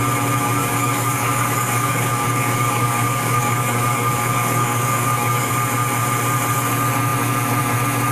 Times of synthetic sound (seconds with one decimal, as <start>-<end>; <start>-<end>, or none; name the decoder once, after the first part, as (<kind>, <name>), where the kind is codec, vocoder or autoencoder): 0.6-5.5 (codec, DAC)

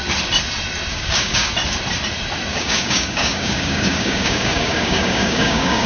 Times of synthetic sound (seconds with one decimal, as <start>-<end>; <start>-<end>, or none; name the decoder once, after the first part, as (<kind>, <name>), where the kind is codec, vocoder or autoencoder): 0.9-1.5 (codec, DAC); 2.5-5.9